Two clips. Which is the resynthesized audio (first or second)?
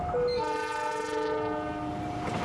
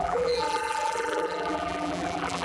second